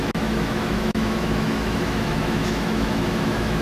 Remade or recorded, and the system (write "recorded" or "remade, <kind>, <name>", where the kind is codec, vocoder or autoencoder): remade, autoencoder, DAC-VAE